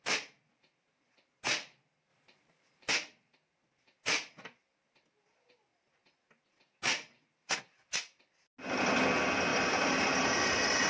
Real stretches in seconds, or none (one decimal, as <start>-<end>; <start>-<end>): 0.0-2.1; 2.9-9.5; 10.3-10.9